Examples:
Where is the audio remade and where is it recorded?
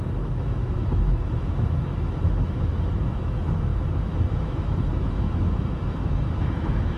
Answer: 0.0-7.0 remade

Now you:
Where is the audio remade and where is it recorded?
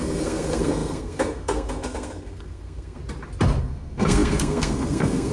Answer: 0.0-3.0 remade; 3.0-3.6 recorded; 3.6-5.3 remade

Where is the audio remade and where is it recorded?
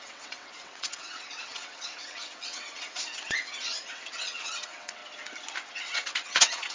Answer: 0.0-5.0 remade; 5.0-5.7 recorded; 5.7-6.7 remade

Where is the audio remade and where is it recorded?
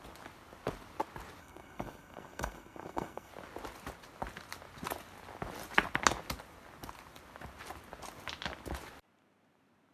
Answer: 0.0-1.4 recorded; 1.4-3.3 remade; 3.3-9.9 recorded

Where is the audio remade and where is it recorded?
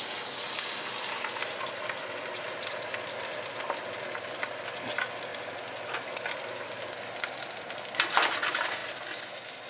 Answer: 0.0-9.7 recorded